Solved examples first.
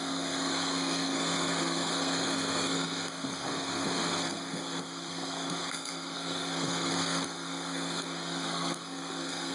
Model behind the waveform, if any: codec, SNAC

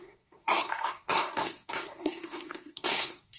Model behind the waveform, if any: codec, SNAC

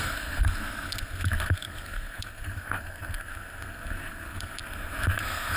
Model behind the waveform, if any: codec, SNAC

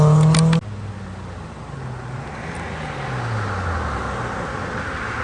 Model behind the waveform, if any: none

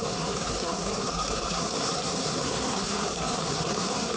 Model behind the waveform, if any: codec, SNAC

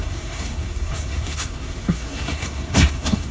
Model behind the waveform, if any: codec, SNAC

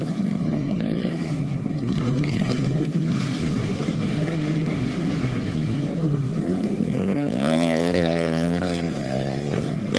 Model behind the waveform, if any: codec, SNAC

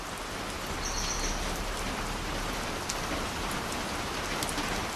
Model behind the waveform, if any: none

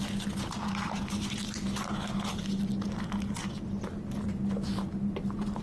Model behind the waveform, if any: none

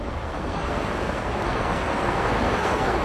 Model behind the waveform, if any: codec, SNAC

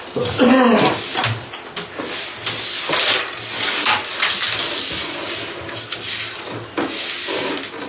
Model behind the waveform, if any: none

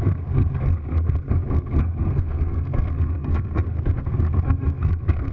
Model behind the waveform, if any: codec, SNAC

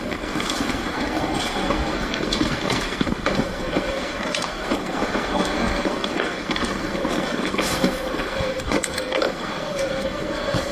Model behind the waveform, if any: codec, SNAC